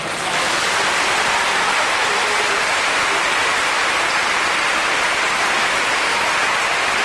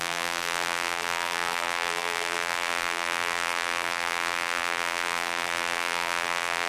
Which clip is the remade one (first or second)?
second